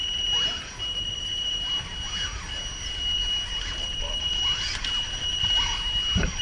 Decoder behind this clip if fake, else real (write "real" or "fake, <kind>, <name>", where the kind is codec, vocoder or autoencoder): real